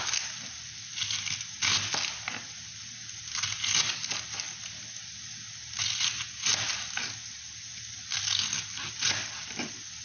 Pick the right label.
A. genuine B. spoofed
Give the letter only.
A